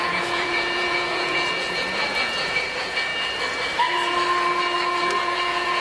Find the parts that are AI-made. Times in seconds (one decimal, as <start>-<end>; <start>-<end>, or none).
0.0-3.1; 5.2-5.8